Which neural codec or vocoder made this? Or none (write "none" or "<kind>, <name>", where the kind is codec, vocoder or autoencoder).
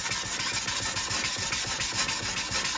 none